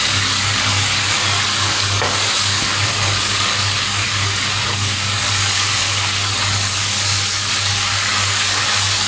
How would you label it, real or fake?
fake